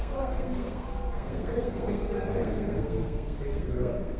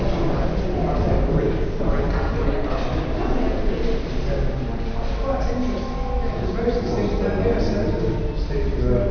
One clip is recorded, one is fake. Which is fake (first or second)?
first